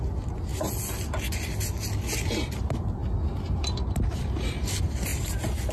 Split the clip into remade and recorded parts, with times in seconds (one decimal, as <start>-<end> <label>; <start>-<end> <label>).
0.0-5.7 recorded